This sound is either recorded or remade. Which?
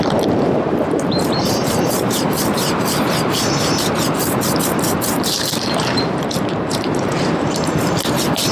remade